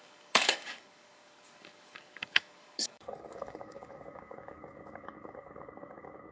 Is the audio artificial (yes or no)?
yes